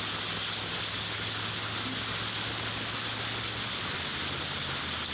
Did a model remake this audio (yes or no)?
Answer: no